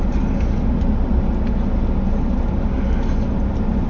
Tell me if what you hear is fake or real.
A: real